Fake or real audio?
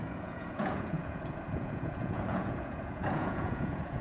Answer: fake